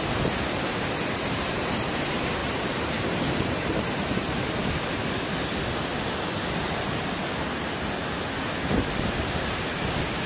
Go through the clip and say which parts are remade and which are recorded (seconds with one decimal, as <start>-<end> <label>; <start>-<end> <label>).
0.0-2.4 recorded; 2.4-4.5 remade; 4.5-10.3 recorded